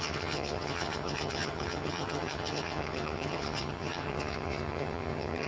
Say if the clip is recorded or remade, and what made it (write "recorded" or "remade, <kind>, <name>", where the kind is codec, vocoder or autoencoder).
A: remade, vocoder, HiFi-GAN